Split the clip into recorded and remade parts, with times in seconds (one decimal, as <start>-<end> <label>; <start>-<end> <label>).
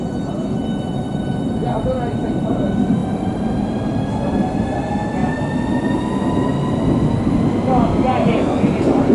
0.0-9.1 recorded